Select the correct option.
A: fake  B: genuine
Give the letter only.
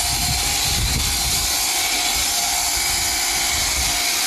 B